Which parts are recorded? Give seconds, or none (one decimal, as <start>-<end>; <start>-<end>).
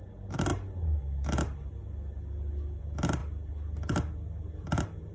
0.0-5.1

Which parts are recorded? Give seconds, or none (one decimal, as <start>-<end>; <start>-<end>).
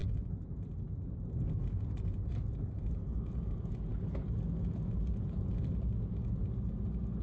0.0-7.2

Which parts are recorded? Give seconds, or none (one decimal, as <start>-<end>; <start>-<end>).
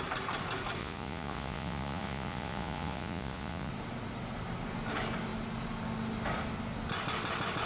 0.0-0.8; 3.7-7.7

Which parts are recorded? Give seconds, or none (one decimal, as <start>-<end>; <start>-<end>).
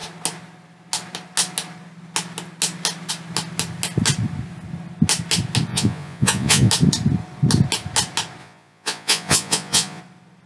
0.0-5.7; 6.7-8.4; 10.0-10.5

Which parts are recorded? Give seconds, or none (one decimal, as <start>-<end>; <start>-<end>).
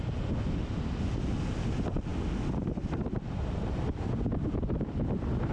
0.0-5.5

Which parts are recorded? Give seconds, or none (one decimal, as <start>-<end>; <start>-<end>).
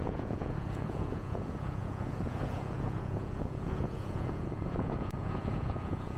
none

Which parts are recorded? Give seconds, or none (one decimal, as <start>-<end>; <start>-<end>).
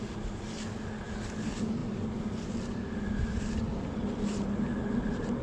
0.0-5.4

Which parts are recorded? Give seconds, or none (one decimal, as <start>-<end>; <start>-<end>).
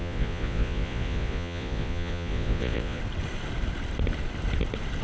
3.0-5.0